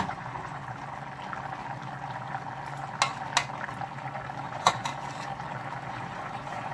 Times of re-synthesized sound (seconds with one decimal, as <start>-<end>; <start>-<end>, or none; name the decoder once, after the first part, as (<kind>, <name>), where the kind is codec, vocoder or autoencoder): 0.0-0.6 (vocoder, Vocos); 4.4-4.9; 5.9-6.7